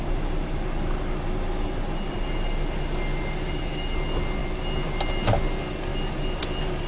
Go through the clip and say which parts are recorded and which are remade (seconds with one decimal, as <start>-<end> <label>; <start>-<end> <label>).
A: 0.0-6.9 recorded